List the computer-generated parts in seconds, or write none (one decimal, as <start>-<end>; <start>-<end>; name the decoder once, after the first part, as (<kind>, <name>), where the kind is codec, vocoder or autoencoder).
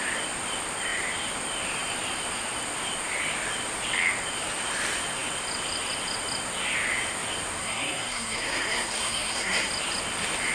7.6-9.7 (codec, SNAC)